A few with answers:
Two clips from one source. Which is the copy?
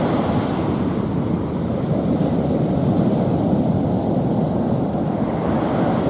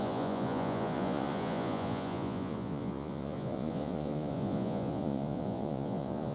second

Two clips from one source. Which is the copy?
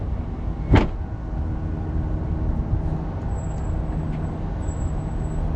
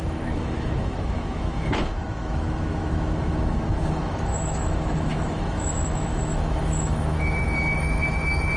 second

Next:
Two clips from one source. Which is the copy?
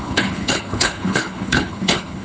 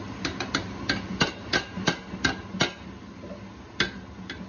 first